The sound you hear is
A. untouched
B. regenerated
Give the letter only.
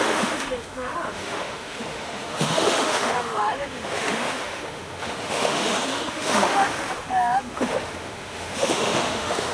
B